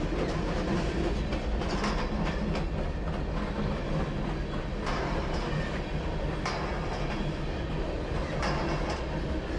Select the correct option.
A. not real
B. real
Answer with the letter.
B